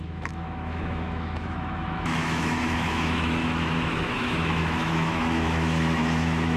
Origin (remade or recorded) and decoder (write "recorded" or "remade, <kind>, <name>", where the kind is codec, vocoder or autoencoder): remade, autoencoder, DAC-VAE